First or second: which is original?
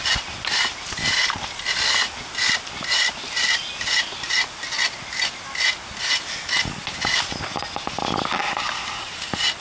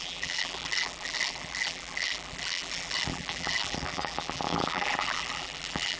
first